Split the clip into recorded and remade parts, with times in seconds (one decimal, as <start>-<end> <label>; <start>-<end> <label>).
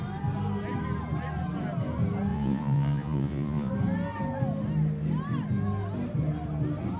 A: 0.0-2.3 recorded; 2.3-3.7 remade; 3.7-7.0 recorded